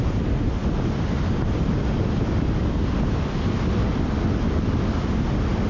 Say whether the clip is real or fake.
real